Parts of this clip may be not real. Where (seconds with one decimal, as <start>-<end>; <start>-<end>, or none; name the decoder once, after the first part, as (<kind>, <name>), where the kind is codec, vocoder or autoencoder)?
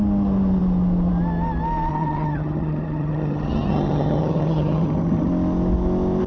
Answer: 1.9-5.3 (vocoder, HiFi-GAN)